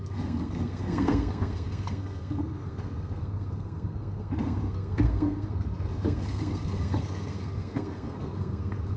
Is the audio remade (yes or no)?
yes